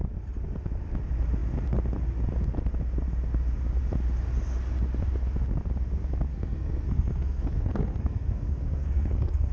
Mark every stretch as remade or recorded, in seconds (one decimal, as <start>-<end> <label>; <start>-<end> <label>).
0.0-6.3 recorded; 6.3-9.5 remade